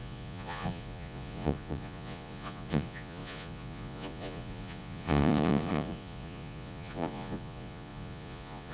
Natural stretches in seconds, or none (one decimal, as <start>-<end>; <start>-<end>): none